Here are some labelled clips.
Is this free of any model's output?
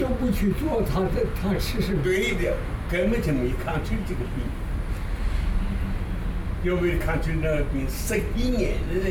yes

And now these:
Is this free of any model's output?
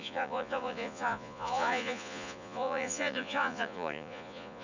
no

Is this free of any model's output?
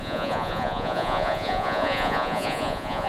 no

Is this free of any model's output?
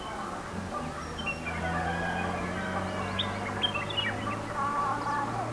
yes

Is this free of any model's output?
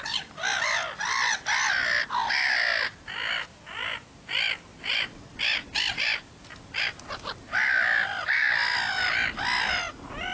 yes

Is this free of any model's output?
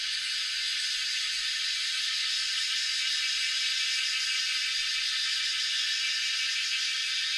no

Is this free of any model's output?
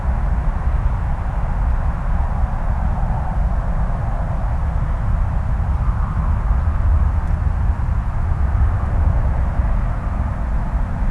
yes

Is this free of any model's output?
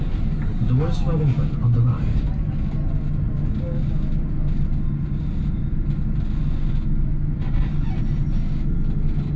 yes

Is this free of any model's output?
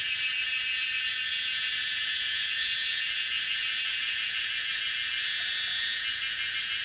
no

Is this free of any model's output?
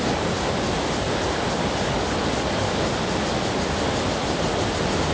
yes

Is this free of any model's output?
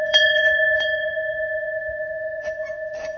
no